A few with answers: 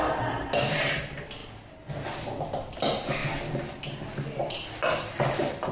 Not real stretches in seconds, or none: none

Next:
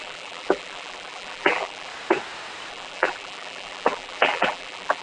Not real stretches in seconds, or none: 0.0-1.9 (vocoder, BigVGAN v2); 2.7-5.0

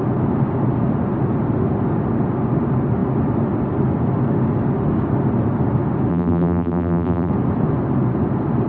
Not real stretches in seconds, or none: 6.1-7.3 (vocoder, BigVGAN v2)

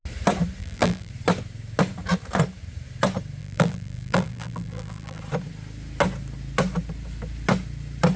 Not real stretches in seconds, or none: 0.6-1.1 (vocoder, BigVGAN v2); 3.4-5.2

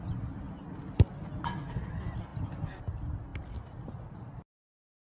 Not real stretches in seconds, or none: 2.3-2.9 (vocoder, BigVGAN v2); 3.3-4.0